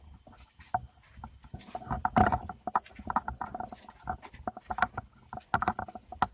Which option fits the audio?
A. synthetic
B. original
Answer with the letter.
B